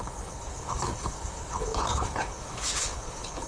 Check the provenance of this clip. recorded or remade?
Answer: remade